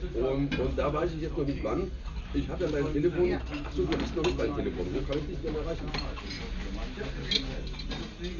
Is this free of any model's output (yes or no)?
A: yes